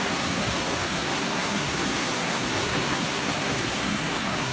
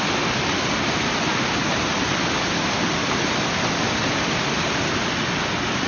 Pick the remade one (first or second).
first